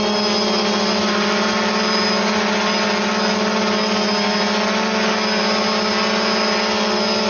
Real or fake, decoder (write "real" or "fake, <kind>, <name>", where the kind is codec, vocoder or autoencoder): real